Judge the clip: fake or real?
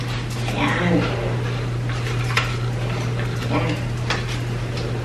real